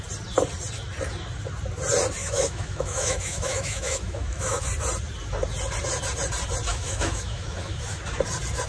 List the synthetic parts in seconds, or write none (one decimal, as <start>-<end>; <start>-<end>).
2.2-4.7; 6.7-8.0